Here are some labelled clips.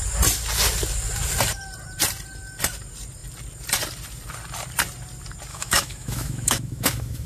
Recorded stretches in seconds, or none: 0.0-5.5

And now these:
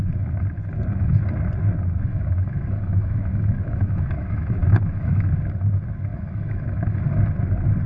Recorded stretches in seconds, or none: 0.0-2.1; 5.3-6.1; 7.0-7.9

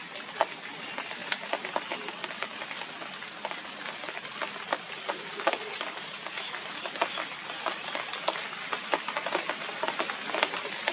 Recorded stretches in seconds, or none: 0.0-10.9